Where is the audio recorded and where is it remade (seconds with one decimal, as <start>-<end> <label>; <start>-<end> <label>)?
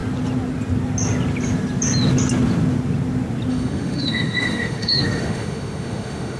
0.0-3.5 recorded; 3.5-6.4 remade